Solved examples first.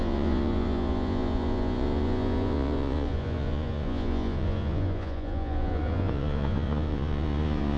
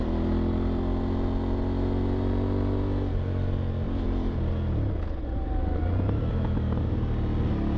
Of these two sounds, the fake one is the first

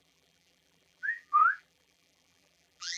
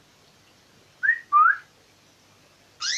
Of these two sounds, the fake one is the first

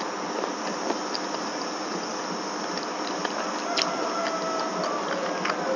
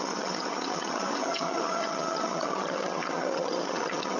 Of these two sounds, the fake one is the second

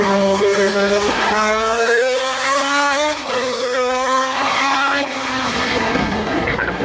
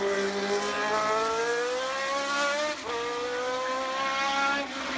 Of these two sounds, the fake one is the first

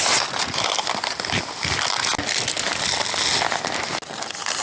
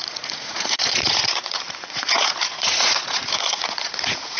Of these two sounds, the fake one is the second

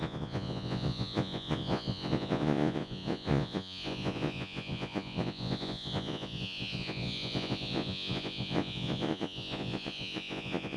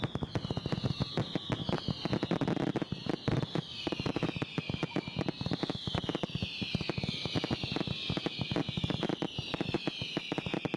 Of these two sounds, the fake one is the first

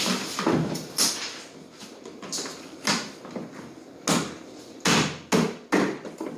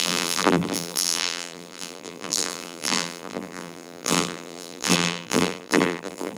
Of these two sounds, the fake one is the second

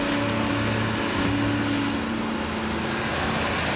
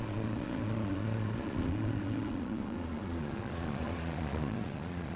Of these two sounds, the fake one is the second